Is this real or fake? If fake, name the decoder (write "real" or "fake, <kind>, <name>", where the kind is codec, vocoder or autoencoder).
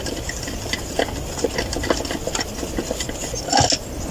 real